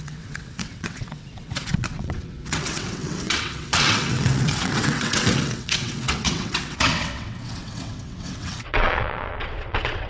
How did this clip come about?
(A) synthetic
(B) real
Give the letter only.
A